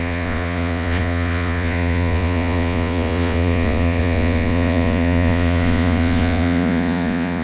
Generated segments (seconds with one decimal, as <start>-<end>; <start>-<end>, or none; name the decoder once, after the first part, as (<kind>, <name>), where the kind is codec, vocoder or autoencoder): 0.0-7.4 (vocoder, Vocos)